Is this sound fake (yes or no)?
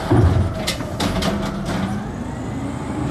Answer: no